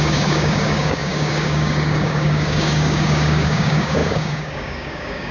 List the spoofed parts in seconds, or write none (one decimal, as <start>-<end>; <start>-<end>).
0.0-5.3